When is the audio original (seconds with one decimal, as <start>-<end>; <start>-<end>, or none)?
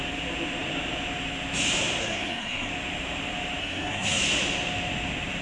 0.0-2.0; 2.7-3.6; 4.2-5.4